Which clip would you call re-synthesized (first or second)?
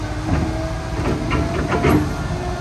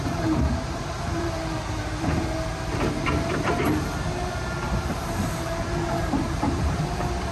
second